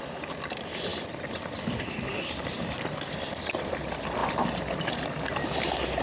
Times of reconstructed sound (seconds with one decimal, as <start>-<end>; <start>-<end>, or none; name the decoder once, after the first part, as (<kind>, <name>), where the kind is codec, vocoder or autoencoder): 0.9-3.7 (vocoder, BigVGAN v2)